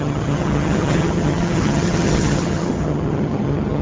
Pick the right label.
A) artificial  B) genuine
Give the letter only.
A